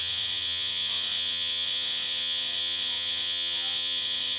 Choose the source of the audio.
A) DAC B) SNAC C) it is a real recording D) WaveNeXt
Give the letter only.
D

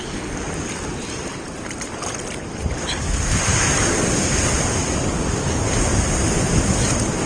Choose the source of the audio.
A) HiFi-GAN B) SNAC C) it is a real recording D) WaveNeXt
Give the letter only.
C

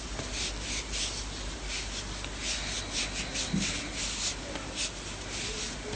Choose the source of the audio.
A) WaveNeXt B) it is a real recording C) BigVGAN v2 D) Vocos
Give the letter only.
B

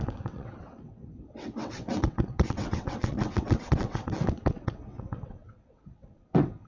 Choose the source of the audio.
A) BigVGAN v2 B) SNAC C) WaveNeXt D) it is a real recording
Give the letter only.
C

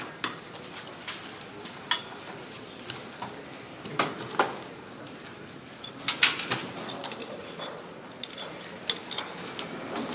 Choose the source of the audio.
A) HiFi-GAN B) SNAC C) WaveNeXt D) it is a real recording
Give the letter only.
D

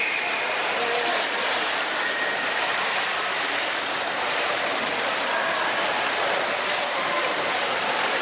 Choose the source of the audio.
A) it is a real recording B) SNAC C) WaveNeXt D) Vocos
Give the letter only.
A